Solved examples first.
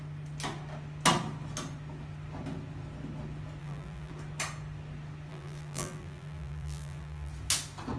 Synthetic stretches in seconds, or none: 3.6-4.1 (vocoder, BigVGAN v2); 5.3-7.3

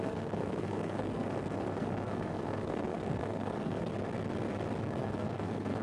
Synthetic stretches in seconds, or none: 0.0-3.9 (codec, SNAC); 4.8-5.8

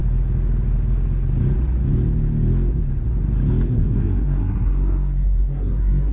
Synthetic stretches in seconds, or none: 3.7-6.1 (codec, SNAC)

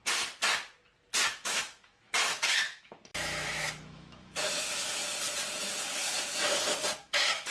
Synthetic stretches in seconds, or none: 1.3-5.0 (autoencoder, DAC-VAE); 5.6-6.1; 7.0-7.5